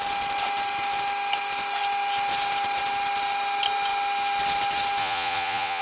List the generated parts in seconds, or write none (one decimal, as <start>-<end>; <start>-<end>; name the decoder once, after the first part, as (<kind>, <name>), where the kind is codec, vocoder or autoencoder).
5.0-5.8 (vocoder, Vocos)